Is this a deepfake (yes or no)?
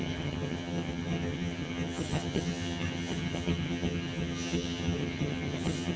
yes